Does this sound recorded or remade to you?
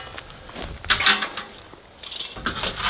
recorded